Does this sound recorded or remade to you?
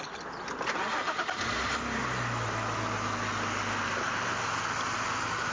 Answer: recorded